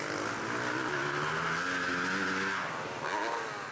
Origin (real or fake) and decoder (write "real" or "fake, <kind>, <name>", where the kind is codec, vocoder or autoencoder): real